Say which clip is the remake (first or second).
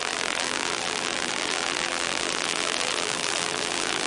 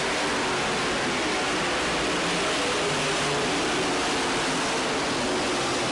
first